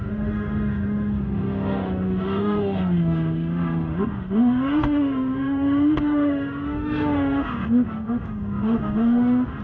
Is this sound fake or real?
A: fake